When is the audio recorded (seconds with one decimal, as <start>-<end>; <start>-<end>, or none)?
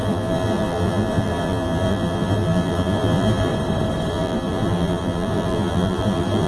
3.5-4.1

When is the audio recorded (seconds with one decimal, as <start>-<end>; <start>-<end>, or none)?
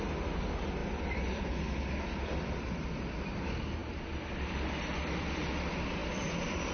0.0-0.8; 1.4-3.8; 5.6-6.0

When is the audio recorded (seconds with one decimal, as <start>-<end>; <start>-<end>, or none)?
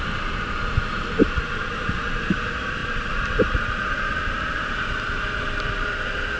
none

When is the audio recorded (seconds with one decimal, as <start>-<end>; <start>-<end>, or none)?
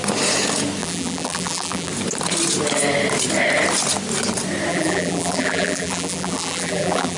0.0-0.8; 1.9-4.7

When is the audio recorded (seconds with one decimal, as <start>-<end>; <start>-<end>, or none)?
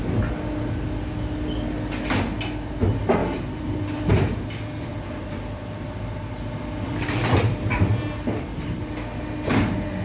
0.0-3.2; 4.1-4.9; 9.5-10.0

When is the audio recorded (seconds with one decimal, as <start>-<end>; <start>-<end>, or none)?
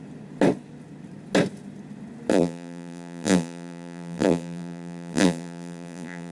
0.0-2.3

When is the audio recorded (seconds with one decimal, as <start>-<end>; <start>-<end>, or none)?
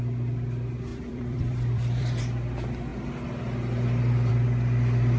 0.0-0.9; 2.2-5.2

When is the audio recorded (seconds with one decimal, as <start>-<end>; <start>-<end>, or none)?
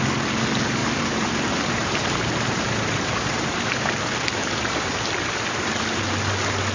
0.0-0.8; 3.7-4.4; 5.0-6.7